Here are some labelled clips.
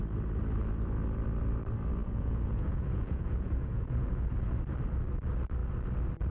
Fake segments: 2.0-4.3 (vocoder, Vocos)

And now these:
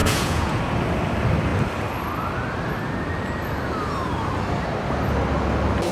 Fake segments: 0.0-0.6 (vocoder, Vocos)

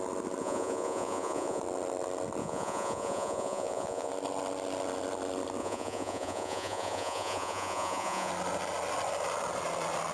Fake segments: 0.4-1.6 (vocoder, Vocos); 2.4-4.1; 5.6-8.3

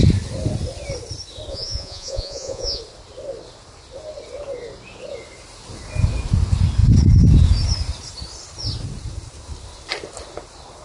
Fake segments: 1.5-2.8 (vocoder, Vocos)

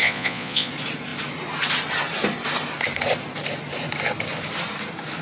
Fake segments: 0.0-0.7 (vocoder, Vocos)

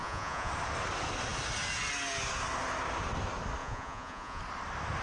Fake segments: 0.0-0.5 (vocoder, Vocos); 3.6-4.4

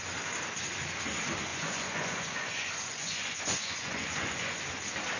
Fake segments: 1.5-4.6 (vocoder, Vocos)